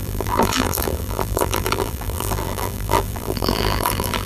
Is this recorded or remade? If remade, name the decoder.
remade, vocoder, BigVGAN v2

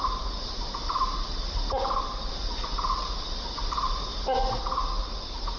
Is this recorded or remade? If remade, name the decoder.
recorded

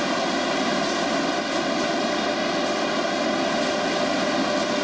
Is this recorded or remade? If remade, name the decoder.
recorded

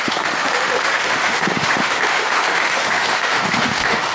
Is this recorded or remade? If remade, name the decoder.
remade, autoencoder, DAC-VAE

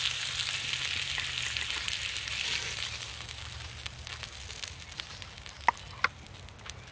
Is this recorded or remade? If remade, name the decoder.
recorded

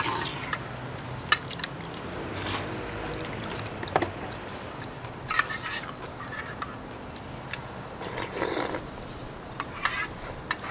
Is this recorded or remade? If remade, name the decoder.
recorded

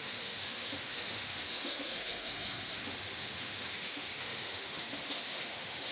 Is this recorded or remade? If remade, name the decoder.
remade, autoencoder, DAC-VAE